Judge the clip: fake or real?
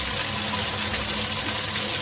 real